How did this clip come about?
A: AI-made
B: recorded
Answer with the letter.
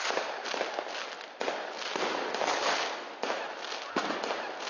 B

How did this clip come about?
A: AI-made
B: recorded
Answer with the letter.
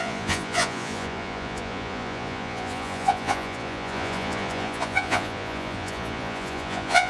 A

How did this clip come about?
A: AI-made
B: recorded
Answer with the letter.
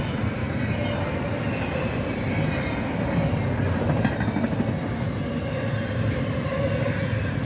B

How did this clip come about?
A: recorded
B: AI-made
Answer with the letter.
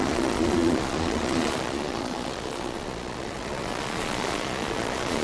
B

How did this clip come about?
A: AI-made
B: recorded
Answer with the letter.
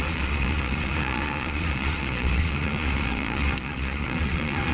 A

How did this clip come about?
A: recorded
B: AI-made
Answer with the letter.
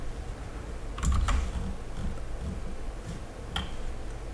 A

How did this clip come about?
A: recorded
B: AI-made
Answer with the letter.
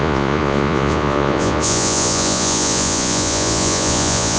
B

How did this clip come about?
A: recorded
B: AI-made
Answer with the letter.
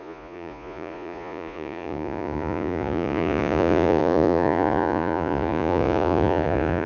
B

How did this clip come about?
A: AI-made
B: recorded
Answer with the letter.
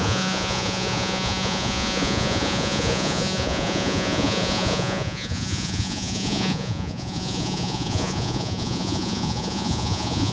A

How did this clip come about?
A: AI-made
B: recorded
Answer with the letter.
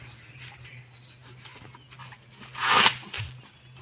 B